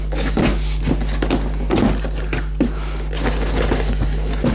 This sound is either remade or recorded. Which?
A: recorded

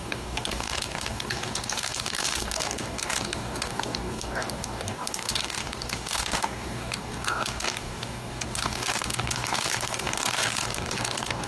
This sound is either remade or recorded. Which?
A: remade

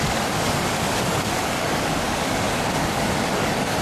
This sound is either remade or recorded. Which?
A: remade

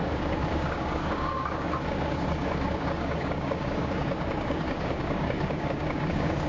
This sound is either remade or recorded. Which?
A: remade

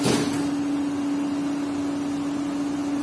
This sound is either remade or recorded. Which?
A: recorded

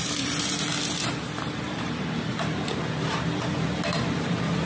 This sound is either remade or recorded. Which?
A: recorded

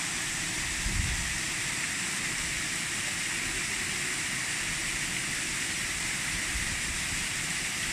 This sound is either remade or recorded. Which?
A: recorded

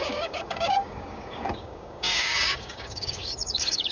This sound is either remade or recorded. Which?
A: remade